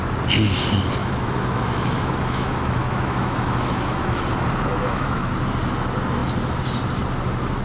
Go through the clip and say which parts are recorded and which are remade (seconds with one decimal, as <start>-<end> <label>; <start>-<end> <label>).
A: 0.0-1.0 recorded; 1.0-4.2 remade; 4.2-4.7 recorded; 4.7-5.3 remade; 5.3-7.6 recorded

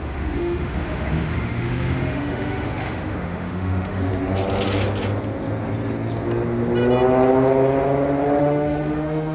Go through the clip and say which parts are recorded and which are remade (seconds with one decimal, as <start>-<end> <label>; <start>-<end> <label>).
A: 0.0-4.1 remade; 4.1-8.4 recorded; 8.4-9.3 remade

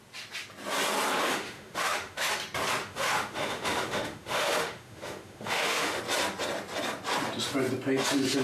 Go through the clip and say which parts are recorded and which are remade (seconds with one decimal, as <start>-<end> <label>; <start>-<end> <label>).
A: 0.0-1.2 recorded; 1.2-2.3 remade; 2.3-2.8 recorded; 2.8-6.0 remade; 6.0-8.4 recorded

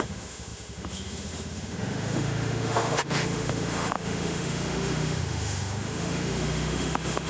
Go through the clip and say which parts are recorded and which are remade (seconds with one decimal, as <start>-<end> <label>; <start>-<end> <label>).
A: 0.0-7.3 remade

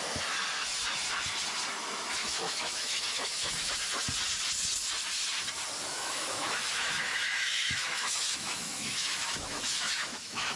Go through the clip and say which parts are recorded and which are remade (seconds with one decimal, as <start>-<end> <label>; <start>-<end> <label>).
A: 0.0-2.2 recorded; 2.2-3.7 remade; 3.7-5.9 recorded; 5.9-10.6 remade